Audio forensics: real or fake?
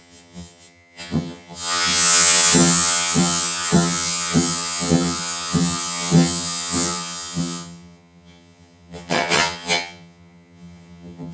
fake